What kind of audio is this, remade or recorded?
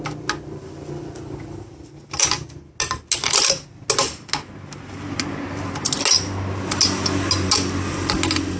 recorded